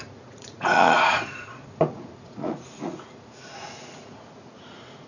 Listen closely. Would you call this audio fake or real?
fake